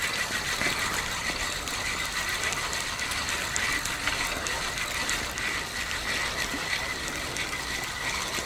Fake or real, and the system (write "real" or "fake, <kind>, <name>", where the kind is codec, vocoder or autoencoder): real